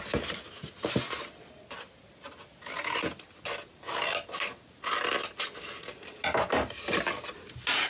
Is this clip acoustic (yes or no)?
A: yes